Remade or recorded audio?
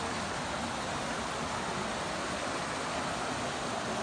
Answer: recorded